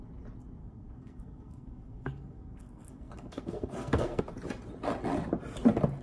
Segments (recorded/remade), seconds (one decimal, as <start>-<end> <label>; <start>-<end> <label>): 0.0-0.6 recorded; 0.6-4.2 remade; 4.2-6.0 recorded